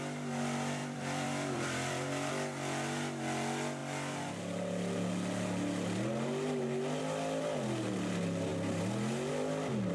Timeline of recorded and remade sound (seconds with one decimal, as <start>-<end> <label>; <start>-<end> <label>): 0.0-0.8 recorded; 0.8-2.3 remade; 2.3-9.9 recorded